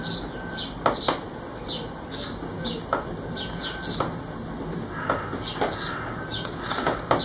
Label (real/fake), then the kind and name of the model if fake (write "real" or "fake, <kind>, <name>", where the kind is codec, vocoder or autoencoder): real